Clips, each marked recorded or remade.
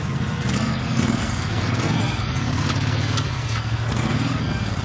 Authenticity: remade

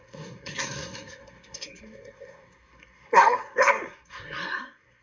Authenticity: remade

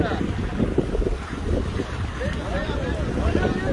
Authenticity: recorded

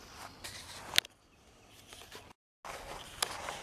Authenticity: recorded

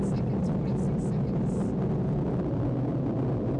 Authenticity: recorded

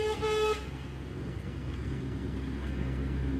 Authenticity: remade